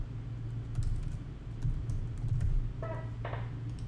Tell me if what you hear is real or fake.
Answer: real